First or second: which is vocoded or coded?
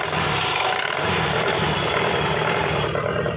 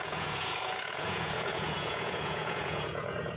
second